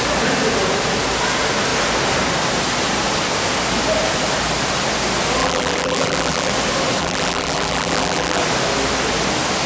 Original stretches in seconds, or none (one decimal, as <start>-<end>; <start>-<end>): 0.0-5.4; 6.5-7.0; 8.4-9.7